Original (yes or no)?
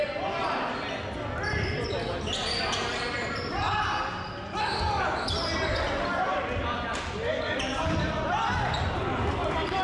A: yes